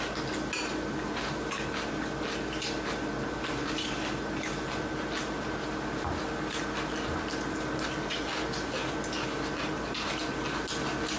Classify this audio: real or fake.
real